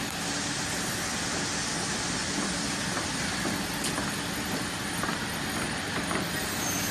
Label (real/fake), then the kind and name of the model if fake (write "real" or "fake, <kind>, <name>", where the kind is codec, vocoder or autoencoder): real